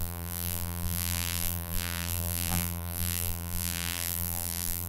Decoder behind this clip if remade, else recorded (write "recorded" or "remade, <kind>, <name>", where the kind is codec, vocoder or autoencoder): remade, vocoder, BigVGAN v2